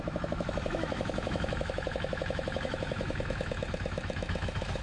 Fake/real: fake